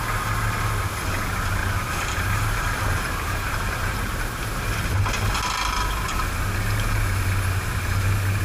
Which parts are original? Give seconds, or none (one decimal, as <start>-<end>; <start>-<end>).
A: 0.0-1.6; 4.6-8.4